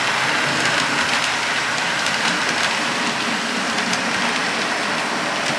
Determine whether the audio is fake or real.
real